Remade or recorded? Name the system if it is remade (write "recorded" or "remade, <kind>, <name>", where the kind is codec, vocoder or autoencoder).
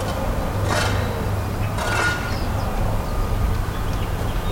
recorded